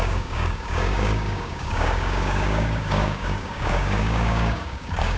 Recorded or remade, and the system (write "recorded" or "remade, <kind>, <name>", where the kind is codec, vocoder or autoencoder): remade, codec, DAC